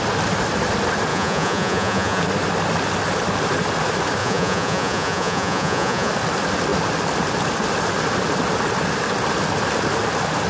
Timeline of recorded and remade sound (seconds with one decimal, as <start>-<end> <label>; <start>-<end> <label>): 0.0-1.1 recorded; 1.1-2.2 remade; 2.2-4.2 recorded; 4.2-6.1 remade; 6.1-10.5 recorded